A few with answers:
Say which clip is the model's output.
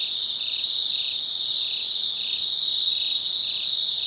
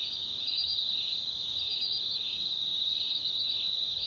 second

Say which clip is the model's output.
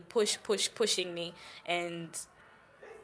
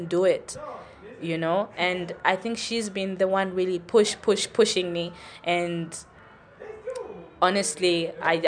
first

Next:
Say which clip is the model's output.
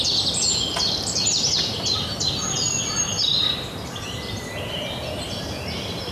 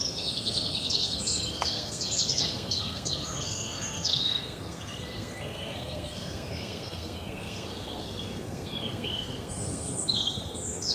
second